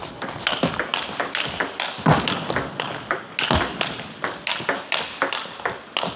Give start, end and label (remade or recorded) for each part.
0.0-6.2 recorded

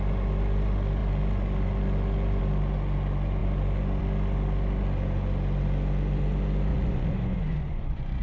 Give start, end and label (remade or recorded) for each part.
0.0-6.7 recorded; 6.7-8.2 remade

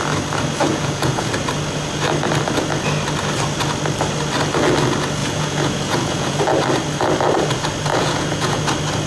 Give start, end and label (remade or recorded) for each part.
0.0-0.7 recorded; 0.7-1.3 remade; 1.3-5.2 recorded; 5.2-6.4 remade; 6.4-7.9 recorded; 7.9-8.6 remade; 8.6-9.1 recorded

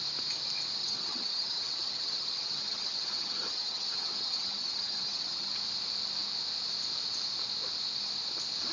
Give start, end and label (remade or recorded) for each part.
0.0-0.8 recorded; 0.8-5.5 remade; 5.5-8.7 recorded

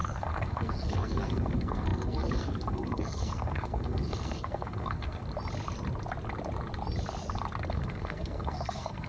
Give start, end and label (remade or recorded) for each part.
0.0-5.2 remade; 5.2-7.7 recorded; 7.7-9.1 remade

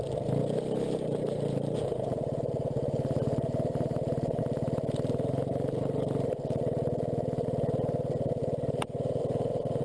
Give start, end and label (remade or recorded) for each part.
0.0-0.4 recorded; 0.4-4.4 remade; 4.4-8.4 recorded; 8.4-9.2 remade; 9.2-9.8 recorded